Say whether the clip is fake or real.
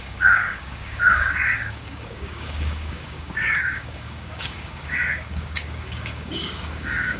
fake